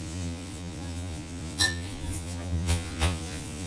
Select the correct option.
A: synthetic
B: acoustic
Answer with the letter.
A